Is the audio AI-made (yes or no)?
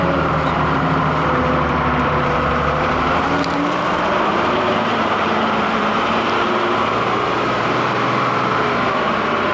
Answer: yes